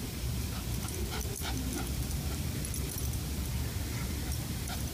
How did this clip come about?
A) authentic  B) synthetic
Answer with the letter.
A